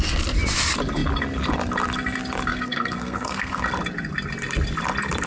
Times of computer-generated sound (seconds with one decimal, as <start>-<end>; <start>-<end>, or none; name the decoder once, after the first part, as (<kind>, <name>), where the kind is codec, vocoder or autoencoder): 2.5-3.6 (codec, SNAC)